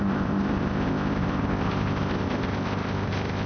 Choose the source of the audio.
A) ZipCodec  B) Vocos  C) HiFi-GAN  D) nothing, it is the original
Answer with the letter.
A